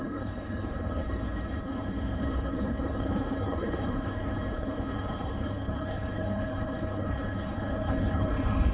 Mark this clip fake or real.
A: fake